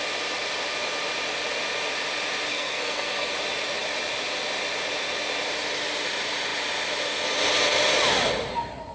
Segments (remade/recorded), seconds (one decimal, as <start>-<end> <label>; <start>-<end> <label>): 0.0-2.5 recorded; 2.5-3.3 remade; 3.3-8.9 recorded